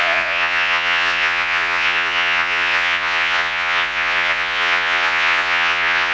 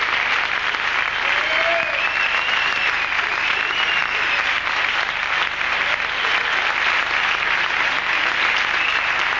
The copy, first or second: first